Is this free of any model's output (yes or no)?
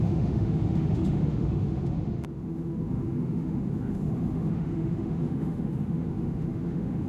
no